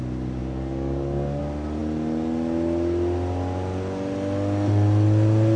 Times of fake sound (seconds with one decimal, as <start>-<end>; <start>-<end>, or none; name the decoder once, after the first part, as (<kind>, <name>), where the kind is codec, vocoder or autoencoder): 0.4-1.4 (codec, DAC)